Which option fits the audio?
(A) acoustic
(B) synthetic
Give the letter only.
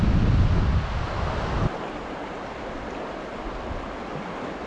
A